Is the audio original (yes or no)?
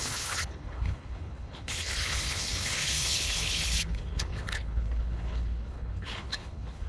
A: no